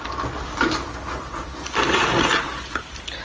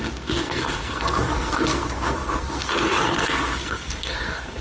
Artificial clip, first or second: second